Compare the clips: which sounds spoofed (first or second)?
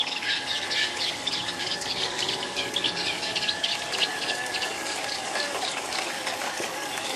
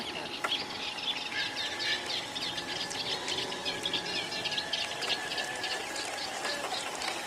first